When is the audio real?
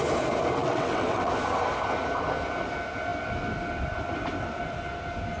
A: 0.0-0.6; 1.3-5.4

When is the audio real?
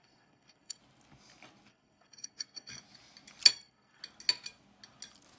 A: 0.8-1.7; 2.7-3.5; 4.0-5.4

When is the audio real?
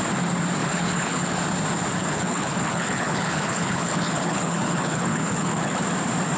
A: 0.0-0.6; 1.4-2.0; 5.8-6.4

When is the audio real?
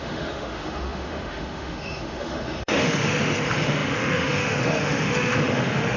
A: none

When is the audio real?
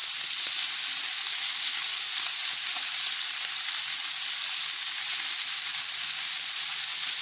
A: 0.0-7.2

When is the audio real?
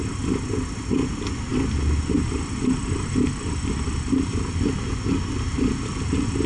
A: 0.0-6.5